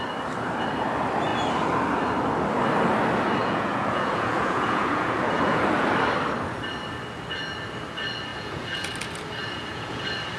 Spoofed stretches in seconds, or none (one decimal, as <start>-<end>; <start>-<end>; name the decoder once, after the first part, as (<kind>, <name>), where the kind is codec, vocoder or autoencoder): 3.4-5.6 (vocoder, Vocos); 8.3-8.9; 9.4-10.0